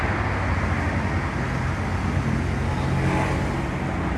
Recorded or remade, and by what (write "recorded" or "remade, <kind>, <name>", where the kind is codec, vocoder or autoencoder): recorded